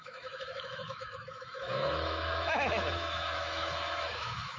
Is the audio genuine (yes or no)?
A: no